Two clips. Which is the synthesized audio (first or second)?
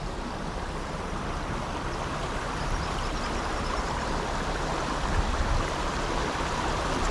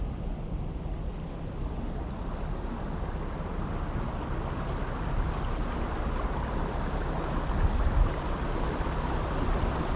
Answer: first